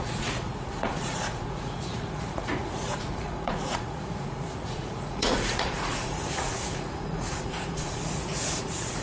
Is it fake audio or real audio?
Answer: fake